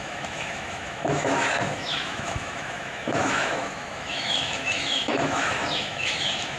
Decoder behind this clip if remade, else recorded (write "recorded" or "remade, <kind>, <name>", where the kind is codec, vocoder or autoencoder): remade, autoencoder, DAC-VAE